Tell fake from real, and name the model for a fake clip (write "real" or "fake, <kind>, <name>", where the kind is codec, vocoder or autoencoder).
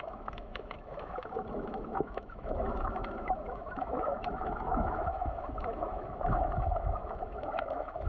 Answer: fake, autoencoder, DAC-VAE